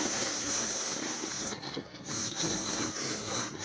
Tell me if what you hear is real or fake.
fake